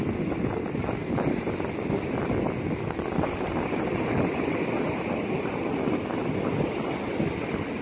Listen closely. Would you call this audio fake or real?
real